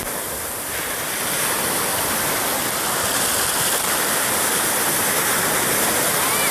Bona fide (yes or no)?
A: yes